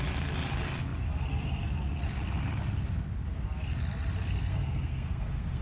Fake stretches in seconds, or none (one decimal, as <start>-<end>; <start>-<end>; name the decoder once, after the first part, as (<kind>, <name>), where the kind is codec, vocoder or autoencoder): 4.5-5.6 (codec, SNAC)